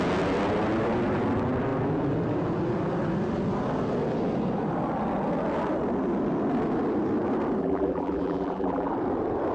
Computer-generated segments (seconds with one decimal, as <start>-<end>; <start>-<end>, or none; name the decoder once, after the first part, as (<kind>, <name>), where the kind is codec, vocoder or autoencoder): 7.6-8.9 (vocoder, BigVGAN v2)